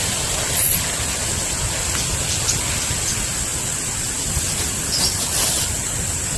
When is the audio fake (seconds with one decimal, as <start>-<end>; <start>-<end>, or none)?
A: none